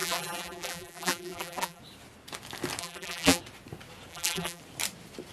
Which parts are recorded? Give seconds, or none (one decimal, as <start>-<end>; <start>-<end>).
1.8-2.8; 3.4-4.1; 4.6-5.3